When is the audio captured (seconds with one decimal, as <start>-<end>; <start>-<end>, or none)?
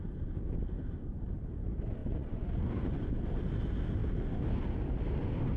0.0-2.0; 3.2-5.6